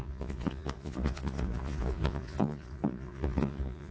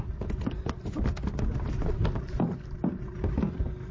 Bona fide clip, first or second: second